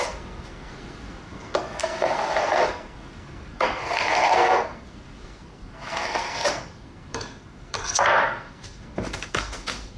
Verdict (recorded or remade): remade